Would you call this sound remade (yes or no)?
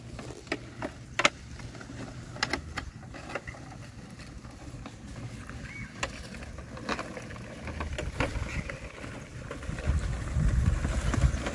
no